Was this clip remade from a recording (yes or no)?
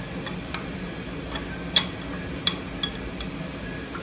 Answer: no